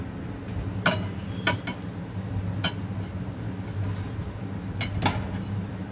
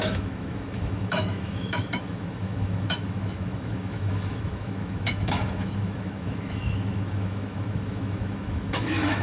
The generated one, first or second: second